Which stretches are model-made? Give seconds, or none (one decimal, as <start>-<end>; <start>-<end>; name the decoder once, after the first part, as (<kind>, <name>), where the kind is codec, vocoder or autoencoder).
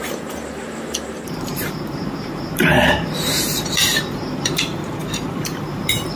0.0-6.2 (vocoder, BigVGAN v2)